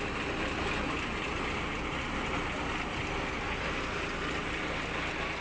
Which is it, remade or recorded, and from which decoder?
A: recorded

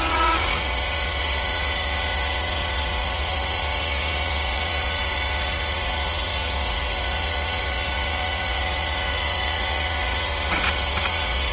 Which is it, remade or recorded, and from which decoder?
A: remade, vocoder, Vocos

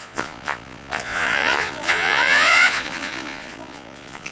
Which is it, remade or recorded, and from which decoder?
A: remade, vocoder, Vocos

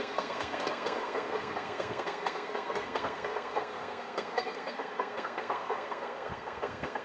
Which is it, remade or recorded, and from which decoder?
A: remade, codec, SNAC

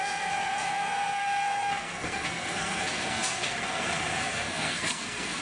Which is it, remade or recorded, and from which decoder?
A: remade, codec, SNAC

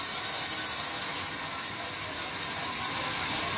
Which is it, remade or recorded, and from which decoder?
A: remade, vocoder, BigVGAN v2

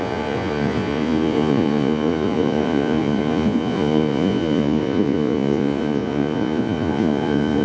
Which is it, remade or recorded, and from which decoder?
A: remade, vocoder, Vocos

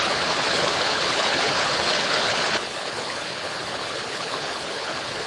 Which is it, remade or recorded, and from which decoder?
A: remade, codec, HILCodec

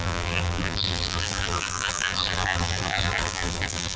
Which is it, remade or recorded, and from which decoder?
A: remade, vocoder, BigVGAN v2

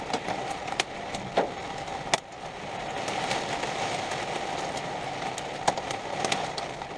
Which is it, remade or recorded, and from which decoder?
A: recorded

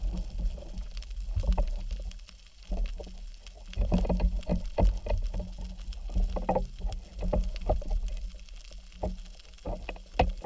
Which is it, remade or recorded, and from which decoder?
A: recorded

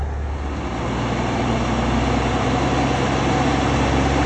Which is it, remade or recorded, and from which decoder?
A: recorded